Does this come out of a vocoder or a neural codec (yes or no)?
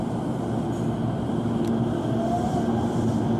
no